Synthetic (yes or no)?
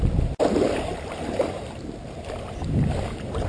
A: no